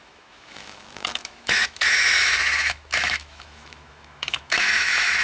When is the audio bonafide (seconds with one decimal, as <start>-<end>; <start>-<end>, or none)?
none